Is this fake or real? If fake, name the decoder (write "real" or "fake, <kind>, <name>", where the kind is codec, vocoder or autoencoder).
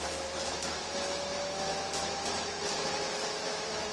fake, autoencoder, DAC-VAE